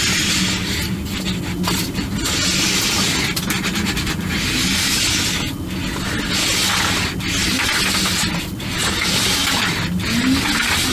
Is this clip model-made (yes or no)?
no